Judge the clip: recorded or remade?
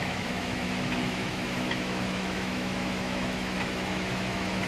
remade